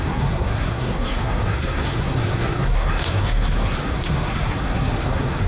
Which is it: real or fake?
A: fake